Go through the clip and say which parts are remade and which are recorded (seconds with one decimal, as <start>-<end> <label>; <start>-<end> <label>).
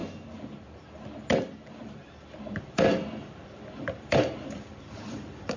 0.0-1.7 recorded; 1.7-5.6 remade